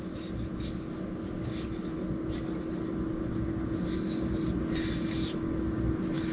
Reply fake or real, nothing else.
real